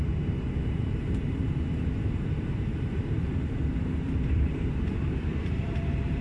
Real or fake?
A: fake